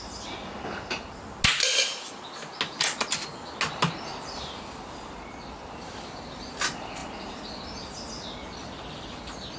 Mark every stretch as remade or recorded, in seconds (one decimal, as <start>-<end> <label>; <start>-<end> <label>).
0.0-9.6 recorded

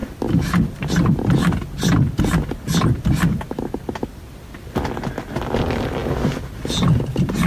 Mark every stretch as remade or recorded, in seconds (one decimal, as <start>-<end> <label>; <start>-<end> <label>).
0.0-7.5 recorded

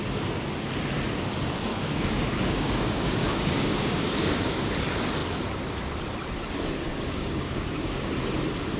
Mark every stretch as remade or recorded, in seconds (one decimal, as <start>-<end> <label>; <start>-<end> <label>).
0.0-1.7 recorded; 1.7-4.7 remade; 4.7-6.9 recorded; 6.9-8.1 remade; 8.1-8.8 recorded